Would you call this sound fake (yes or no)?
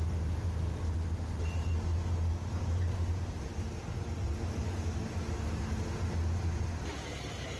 no